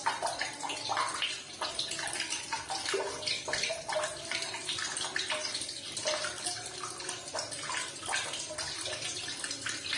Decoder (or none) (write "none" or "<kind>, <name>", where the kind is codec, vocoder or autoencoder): none